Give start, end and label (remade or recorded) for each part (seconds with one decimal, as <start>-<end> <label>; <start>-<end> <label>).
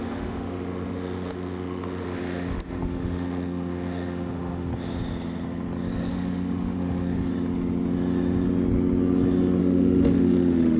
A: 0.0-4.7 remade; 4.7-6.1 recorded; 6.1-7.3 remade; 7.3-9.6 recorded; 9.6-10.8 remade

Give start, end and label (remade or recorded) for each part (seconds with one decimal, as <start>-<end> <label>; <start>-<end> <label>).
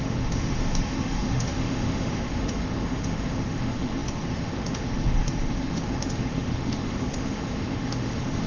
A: 0.0-8.5 remade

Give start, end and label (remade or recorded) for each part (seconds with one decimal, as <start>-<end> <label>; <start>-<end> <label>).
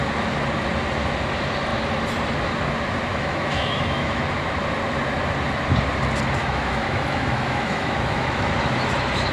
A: 0.0-3.1 recorded; 3.1-4.2 remade; 4.2-6.4 recorded; 6.4-8.5 remade; 8.5-9.3 recorded